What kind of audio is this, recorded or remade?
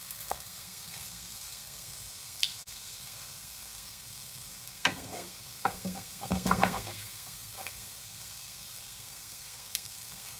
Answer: remade